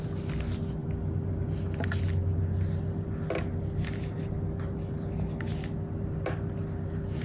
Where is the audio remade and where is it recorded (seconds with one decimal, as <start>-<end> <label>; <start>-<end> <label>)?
0.0-7.2 recorded

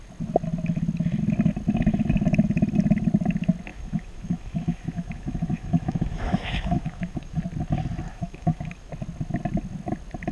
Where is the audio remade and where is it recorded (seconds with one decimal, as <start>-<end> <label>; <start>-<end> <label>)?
0.0-3.7 recorded; 3.7-7.4 remade; 7.4-8.1 recorded; 8.1-8.9 remade; 8.9-10.3 recorded

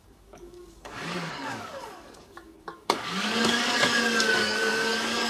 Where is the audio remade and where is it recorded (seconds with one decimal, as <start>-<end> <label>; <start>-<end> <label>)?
0.0-5.3 remade

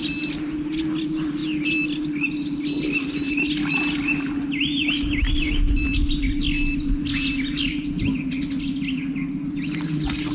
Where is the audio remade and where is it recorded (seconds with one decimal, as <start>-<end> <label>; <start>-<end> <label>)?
0.0-10.3 recorded

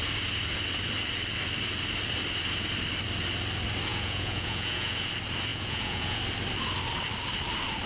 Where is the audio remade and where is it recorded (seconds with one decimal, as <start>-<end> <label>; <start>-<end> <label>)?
0.0-3.9 recorded; 3.9-5.1 remade; 5.1-5.5 recorded; 5.5-6.2 remade; 6.2-7.9 recorded

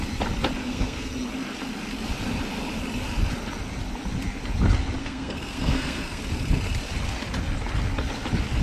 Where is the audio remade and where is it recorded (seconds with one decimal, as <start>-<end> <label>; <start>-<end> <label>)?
0.0-0.6 recorded; 0.6-1.1 remade; 1.1-5.0 recorded; 5.0-6.2 remade; 6.2-8.6 recorded

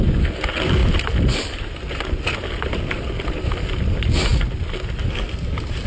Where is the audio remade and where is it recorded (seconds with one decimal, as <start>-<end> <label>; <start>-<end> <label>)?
0.0-5.9 recorded